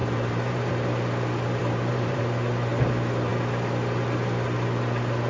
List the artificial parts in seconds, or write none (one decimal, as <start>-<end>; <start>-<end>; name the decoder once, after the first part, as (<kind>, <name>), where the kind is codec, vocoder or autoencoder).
0.0-0.7 (vocoder, BigVGAN v2); 1.6-2.2